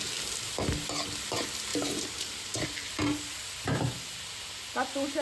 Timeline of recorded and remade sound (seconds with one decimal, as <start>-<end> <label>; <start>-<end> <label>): 0.0-1.7 recorded; 1.7-3.4 remade; 3.4-5.2 recorded